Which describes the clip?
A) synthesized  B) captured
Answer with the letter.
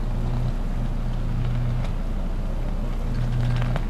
B